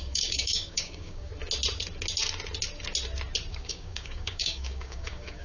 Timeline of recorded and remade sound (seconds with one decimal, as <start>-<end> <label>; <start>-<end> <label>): 0.0-1.3 remade; 1.3-3.5 recorded; 3.5-5.4 remade